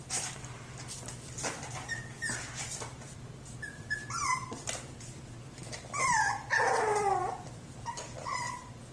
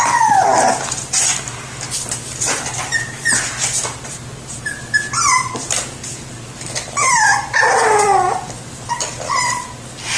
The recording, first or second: second